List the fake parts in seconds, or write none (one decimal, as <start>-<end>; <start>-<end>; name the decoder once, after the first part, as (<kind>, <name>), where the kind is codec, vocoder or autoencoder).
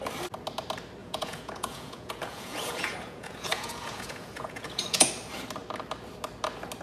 1.0-5.1 (vocoder, Vocos)